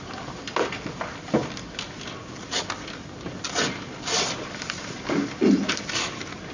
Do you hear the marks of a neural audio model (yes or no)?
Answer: no